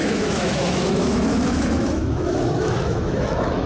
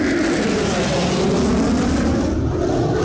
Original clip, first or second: second